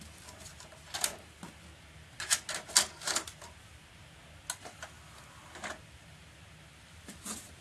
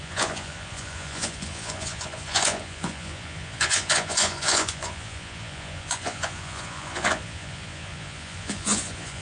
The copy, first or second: second